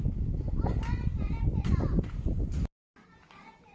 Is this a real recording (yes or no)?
yes